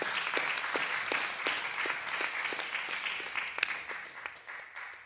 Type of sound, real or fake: real